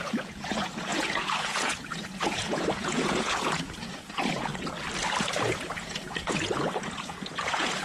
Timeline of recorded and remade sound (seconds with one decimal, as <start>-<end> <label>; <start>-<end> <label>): 0.0-4.5 remade; 4.5-5.2 recorded; 5.2-7.8 remade